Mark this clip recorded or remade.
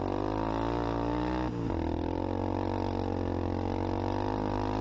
recorded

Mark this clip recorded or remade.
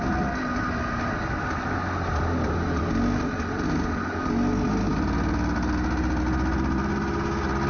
recorded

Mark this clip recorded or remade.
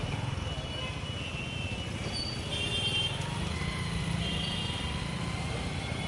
recorded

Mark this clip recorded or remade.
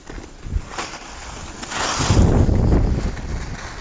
recorded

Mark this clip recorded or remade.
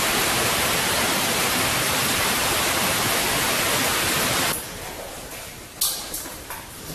recorded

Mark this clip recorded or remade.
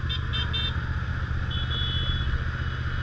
recorded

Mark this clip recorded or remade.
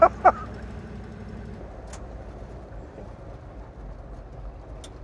recorded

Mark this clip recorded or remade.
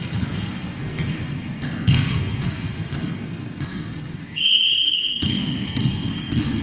remade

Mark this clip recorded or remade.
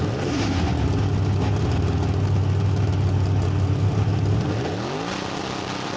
recorded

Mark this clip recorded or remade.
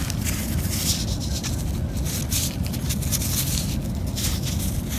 recorded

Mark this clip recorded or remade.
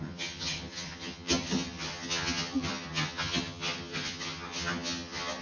remade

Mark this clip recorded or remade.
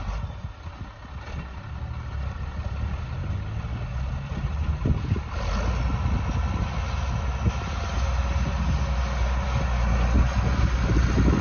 recorded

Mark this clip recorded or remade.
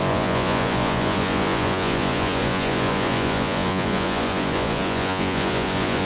remade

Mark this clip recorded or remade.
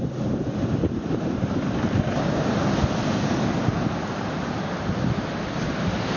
recorded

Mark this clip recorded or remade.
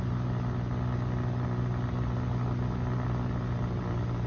recorded